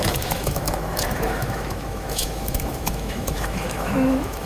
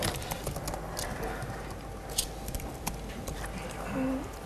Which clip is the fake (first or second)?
first